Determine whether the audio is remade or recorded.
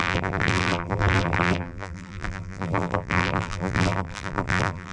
remade